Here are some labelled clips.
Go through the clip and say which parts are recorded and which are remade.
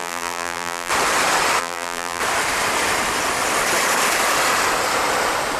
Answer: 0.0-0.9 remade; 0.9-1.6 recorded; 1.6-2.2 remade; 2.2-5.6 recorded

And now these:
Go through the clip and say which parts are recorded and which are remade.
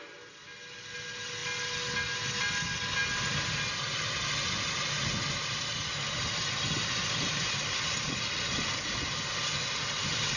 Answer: 0.0-10.4 recorded